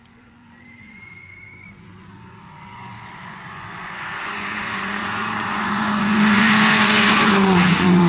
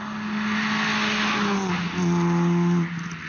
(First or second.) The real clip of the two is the second